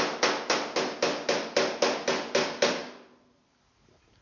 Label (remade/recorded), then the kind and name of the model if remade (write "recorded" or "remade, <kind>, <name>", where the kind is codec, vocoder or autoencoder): recorded